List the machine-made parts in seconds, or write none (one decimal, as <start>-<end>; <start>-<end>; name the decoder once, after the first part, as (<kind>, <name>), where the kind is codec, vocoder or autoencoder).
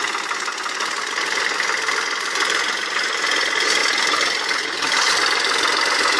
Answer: none